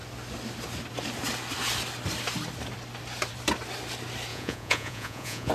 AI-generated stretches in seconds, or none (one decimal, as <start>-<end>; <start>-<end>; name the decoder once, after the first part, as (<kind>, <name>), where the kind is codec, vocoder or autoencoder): 4.3-5.5 (vocoder, Vocos)